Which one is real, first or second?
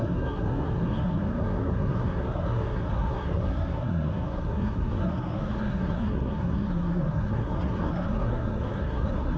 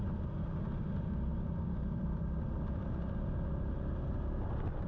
second